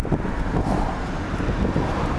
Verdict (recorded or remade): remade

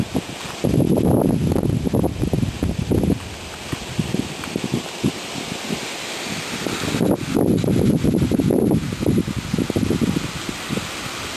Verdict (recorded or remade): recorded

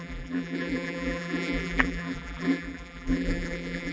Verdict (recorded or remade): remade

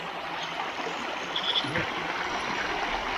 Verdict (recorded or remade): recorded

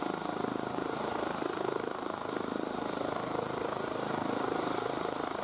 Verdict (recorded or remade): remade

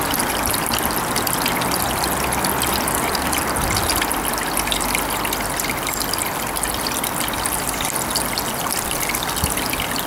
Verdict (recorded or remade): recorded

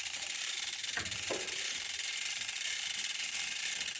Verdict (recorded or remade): remade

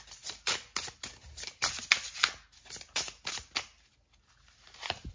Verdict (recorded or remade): recorded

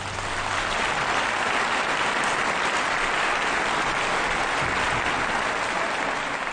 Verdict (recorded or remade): recorded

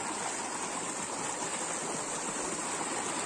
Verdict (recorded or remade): recorded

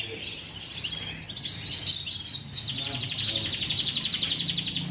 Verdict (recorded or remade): recorded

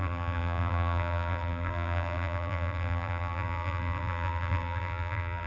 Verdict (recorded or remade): remade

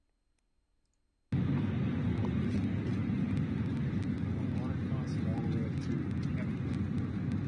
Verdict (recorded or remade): recorded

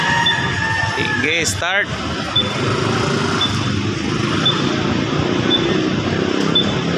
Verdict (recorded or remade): recorded